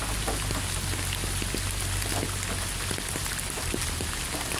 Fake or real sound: real